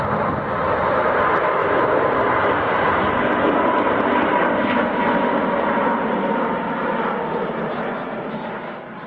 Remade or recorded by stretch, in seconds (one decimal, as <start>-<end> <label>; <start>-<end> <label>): 0.0-1.6 recorded; 1.6-2.4 remade; 2.4-4.3 recorded; 4.3-4.9 remade; 4.9-9.1 recorded